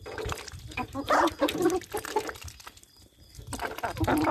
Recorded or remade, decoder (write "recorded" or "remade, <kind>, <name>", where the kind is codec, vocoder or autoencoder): remade, vocoder, BigVGAN v2